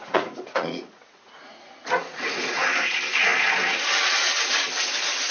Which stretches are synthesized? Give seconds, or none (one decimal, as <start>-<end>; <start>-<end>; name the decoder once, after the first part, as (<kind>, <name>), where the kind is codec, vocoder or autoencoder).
0.0-2.6 (vocoder, Vocos)